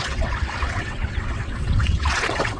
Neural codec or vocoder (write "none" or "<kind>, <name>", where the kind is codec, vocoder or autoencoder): vocoder, WaveNeXt